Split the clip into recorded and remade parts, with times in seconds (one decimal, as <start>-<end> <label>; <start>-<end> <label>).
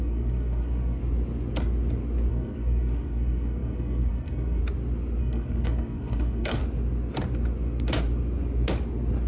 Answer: 0.0-1.0 remade; 1.0-2.3 recorded; 2.3-4.6 remade; 4.6-5.2 recorded; 5.2-6.6 remade; 6.6-9.3 recorded